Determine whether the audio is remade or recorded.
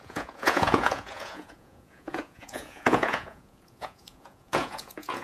remade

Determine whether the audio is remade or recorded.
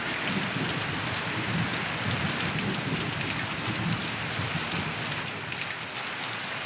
recorded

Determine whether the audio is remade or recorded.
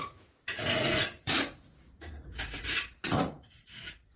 remade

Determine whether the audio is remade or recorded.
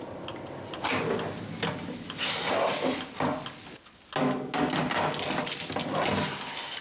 recorded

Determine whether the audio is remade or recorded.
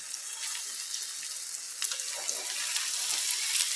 recorded